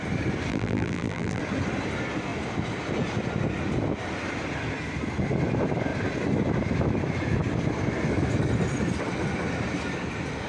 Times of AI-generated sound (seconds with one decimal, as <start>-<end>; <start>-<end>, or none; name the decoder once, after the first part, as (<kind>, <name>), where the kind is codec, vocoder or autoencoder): 0.5-1.4 (vocoder, BigVGAN v2)